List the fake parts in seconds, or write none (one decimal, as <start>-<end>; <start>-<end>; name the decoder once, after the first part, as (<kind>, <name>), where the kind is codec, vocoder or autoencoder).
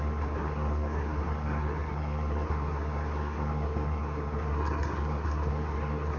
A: 0.0-6.2 (codec, SNAC)